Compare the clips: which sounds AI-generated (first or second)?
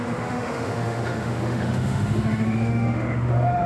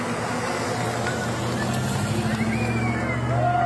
first